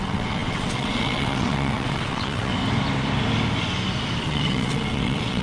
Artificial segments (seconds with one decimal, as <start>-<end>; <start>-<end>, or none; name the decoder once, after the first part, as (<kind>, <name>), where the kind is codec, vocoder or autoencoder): 0.0-2.5 (vocoder, WaveNeXt); 4.2-5.4